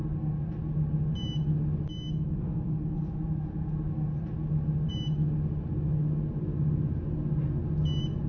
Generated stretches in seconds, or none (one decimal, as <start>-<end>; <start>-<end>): none